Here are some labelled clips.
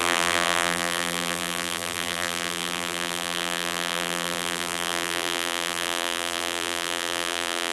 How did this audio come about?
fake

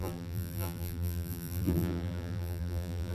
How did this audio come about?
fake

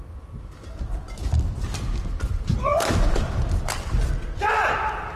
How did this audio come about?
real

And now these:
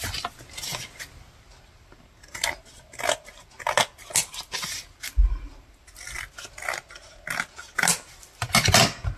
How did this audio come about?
real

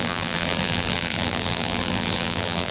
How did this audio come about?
fake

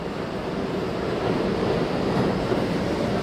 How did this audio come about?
fake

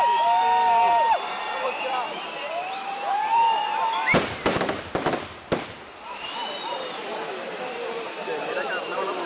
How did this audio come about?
fake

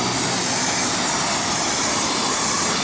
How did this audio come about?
real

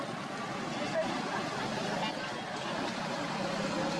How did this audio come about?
real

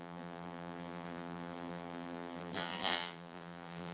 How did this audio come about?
fake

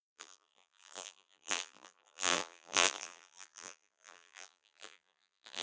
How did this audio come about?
fake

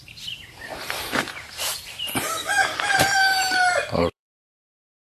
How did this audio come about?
fake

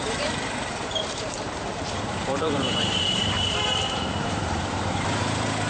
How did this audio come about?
fake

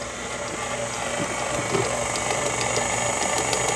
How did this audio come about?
real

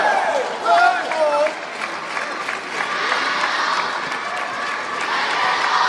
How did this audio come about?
real